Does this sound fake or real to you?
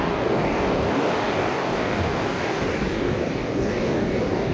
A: fake